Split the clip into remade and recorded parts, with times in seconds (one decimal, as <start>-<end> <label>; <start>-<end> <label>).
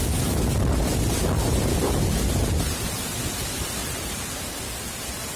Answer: 0.0-5.4 recorded